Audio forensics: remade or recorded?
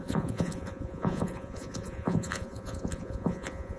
remade